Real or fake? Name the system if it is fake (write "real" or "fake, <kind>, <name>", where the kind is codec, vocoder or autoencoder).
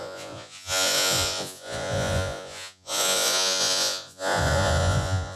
fake, vocoder, Vocos